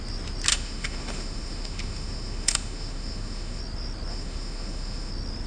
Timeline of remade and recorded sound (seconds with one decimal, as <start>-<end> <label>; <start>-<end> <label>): 0.0-0.5 recorded; 0.5-3.6 remade; 3.6-4.1 recorded; 4.1-5.1 remade; 5.1-5.5 recorded